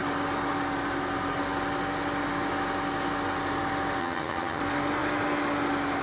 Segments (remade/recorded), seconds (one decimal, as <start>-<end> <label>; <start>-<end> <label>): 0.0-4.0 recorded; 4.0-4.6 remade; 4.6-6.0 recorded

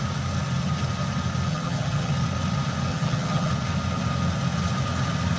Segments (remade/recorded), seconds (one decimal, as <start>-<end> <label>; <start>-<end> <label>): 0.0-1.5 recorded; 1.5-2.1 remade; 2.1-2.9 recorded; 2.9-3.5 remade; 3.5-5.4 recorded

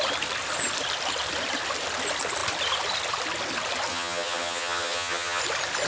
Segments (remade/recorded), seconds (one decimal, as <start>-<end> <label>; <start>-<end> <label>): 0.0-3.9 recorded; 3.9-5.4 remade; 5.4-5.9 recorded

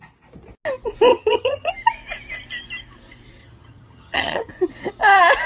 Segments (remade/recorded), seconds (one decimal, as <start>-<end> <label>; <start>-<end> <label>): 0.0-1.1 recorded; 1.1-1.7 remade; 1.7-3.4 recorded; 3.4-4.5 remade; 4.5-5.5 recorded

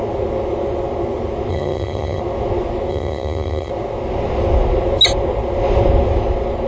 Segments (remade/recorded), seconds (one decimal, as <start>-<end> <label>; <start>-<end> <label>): 0.0-1.5 recorded; 1.5-2.2 remade; 2.2-2.9 recorded; 2.9-3.7 remade; 3.7-6.7 recorded

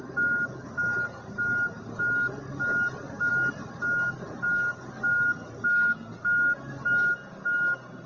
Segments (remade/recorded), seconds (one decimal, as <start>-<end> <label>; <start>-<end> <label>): 0.0-8.1 recorded

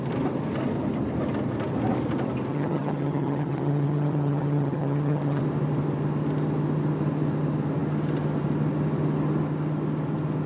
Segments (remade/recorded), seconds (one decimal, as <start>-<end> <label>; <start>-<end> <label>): 0.0-2.5 recorded; 2.5-5.4 remade; 5.4-10.5 recorded